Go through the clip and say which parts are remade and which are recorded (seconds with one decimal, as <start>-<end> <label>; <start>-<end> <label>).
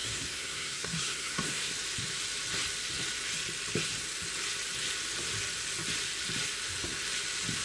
0.0-1.7 remade; 1.7-7.6 recorded